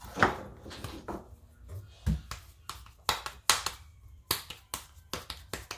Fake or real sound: real